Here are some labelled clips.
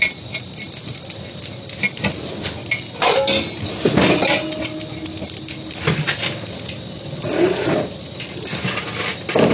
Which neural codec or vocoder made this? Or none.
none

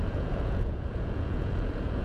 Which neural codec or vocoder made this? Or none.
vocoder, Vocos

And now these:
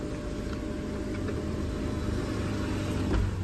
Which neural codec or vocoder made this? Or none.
none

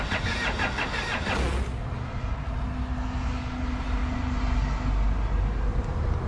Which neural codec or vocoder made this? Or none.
none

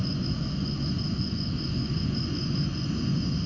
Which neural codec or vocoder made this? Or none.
vocoder, Vocos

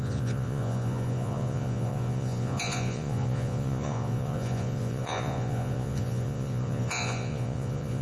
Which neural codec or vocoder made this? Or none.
vocoder, Vocos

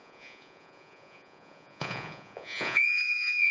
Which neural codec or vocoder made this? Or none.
vocoder, Vocos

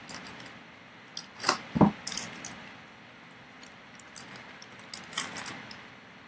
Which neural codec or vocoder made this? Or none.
none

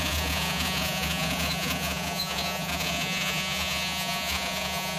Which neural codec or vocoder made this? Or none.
vocoder, Vocos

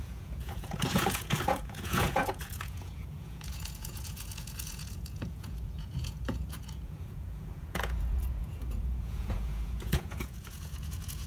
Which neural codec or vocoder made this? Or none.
vocoder, Vocos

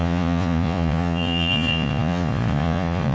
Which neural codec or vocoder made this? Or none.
vocoder, Vocos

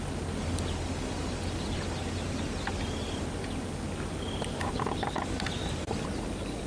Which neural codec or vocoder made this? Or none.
none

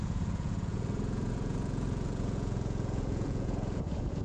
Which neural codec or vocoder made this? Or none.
vocoder, Vocos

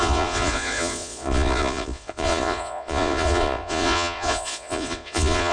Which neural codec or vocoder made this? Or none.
vocoder, Vocos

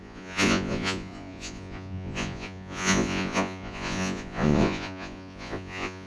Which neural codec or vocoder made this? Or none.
vocoder, Vocos